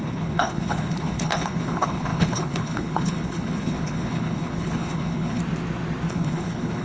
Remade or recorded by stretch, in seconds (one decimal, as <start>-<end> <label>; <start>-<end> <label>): 0.0-5.4 remade; 5.4-6.1 recorded; 6.1-6.8 remade

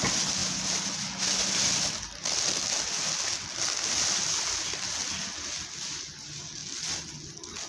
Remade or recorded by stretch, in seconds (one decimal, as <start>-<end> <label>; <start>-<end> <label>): 0.0-7.7 recorded

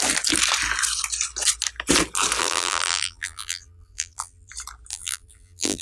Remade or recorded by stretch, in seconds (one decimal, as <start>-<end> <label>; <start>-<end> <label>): 0.0-2.4 recorded; 2.4-4.5 remade; 4.5-4.9 recorded; 4.9-5.8 remade

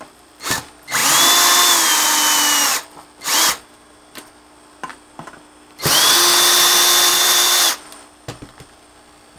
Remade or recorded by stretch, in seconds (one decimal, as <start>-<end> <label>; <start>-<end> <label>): 0.0-7.1 recorded; 7.1-8.7 remade; 8.7-9.4 recorded

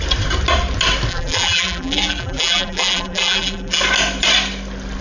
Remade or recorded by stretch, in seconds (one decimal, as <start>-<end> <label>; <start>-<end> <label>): 0.0-1.1 recorded; 1.1-3.8 remade; 3.8-5.0 recorded